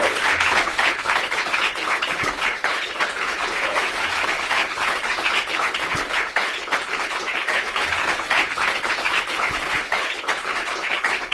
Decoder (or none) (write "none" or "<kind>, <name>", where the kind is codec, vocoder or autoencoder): codec, HILCodec